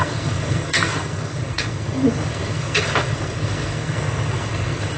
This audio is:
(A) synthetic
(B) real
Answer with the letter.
A